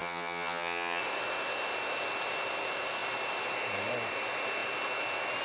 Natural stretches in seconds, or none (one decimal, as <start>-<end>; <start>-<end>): 1.0-5.4